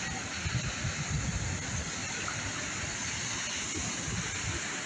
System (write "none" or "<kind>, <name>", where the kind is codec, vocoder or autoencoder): none